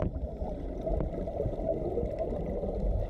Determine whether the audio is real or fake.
real